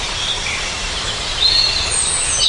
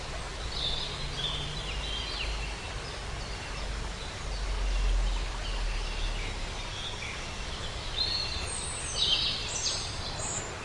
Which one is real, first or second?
second